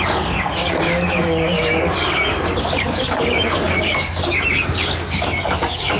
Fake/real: fake